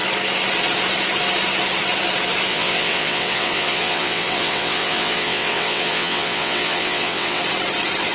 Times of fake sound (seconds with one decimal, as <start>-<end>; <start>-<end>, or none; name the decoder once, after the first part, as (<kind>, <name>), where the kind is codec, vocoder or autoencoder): 2.5-7.4 (vocoder, WaveNeXt)